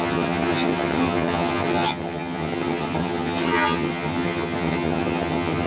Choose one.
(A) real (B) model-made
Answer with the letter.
B